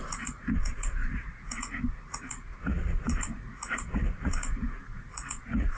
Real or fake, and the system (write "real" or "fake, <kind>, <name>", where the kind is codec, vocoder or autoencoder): fake, vocoder, Vocos